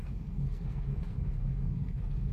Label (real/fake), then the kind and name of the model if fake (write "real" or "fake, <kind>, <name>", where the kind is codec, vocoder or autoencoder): fake, codec, SNAC